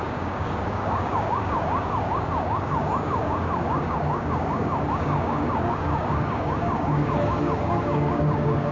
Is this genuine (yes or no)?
no